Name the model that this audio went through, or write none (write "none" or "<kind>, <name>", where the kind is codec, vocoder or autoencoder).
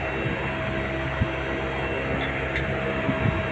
none